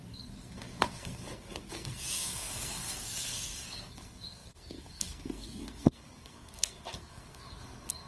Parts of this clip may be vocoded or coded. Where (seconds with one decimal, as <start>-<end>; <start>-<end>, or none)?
0.0-8.1